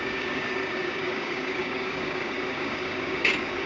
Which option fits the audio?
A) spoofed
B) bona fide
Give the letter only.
A